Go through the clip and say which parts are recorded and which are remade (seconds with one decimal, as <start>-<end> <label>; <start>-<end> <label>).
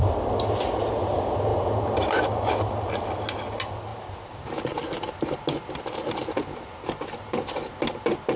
0.0-3.9 recorded; 3.9-8.4 remade